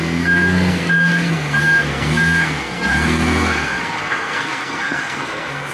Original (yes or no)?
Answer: no